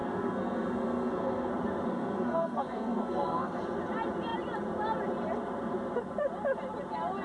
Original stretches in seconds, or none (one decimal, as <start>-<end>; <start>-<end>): 1.5-1.9; 3.6-7.2